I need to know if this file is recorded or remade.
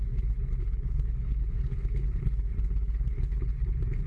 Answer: remade